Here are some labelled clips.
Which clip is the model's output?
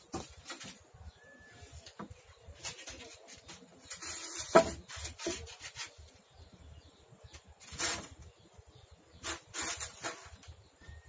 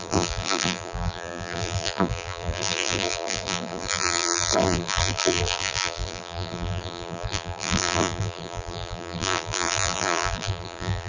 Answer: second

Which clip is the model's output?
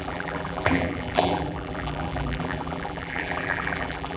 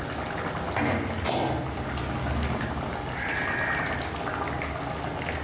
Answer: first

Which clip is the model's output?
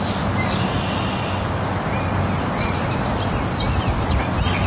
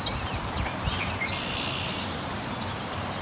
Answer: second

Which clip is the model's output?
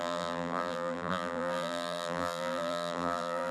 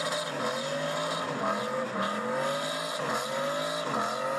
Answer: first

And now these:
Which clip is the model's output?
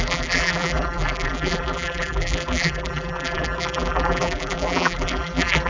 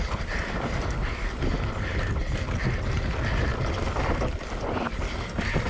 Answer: first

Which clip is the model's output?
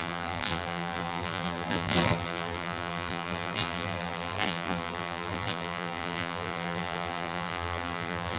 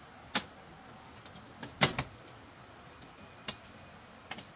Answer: first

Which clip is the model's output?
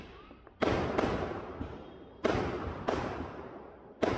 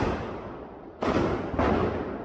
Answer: first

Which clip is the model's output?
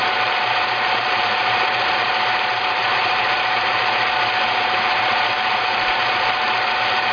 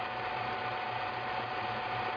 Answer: first